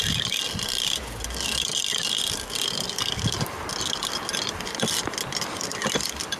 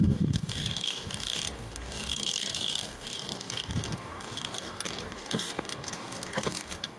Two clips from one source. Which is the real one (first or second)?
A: first